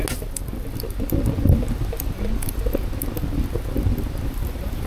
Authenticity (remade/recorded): recorded